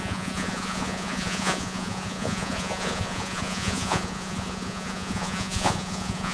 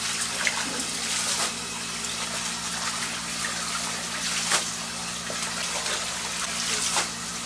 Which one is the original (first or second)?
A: second